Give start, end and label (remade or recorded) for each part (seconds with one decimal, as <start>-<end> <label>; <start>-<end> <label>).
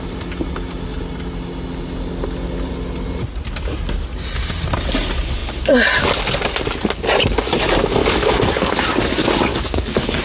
0.0-8.0 recorded; 8.0-8.7 remade; 8.7-9.5 recorded; 9.5-10.2 remade